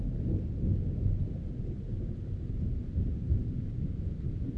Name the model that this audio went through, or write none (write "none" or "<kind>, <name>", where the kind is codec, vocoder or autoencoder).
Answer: none